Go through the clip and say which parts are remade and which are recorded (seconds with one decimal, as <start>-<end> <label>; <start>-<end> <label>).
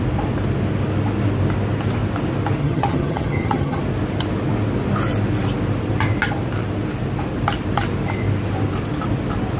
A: 0.0-2.6 recorded; 2.6-3.8 remade; 3.8-9.6 recorded